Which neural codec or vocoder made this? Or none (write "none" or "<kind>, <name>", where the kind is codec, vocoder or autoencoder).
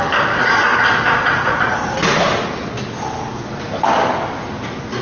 none